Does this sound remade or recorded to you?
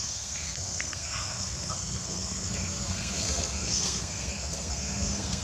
remade